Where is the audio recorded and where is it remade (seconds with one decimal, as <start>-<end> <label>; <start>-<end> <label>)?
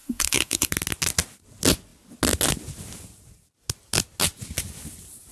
0.0-0.7 remade; 0.7-5.3 recorded